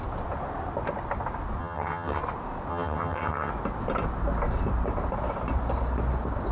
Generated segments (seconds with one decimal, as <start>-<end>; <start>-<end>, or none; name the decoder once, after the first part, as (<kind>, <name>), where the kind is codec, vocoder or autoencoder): 1.6-2.2 (vocoder, HiFi-GAN); 2.7-3.5